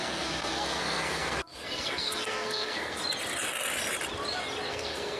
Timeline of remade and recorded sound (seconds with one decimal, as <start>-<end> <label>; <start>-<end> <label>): 0.0-3.0 remade; 3.0-4.7 recorded; 4.7-5.2 remade